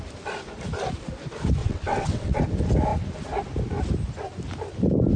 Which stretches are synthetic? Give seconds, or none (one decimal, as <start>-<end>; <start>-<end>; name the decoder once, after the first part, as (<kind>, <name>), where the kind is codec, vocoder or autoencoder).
1.6-2.4 (vocoder, WaveNeXt)